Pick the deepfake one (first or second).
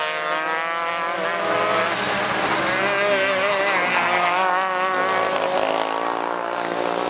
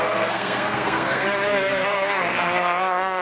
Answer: second